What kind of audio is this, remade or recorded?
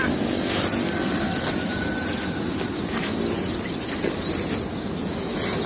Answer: recorded